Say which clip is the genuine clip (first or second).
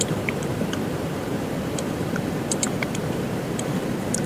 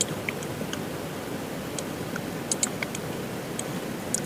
second